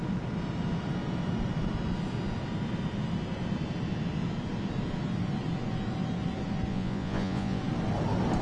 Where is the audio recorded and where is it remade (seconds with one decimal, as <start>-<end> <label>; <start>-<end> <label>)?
0.0-6.7 recorded; 6.7-7.6 remade; 7.6-8.4 recorded